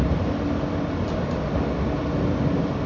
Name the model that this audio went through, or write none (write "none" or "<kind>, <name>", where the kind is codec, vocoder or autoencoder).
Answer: none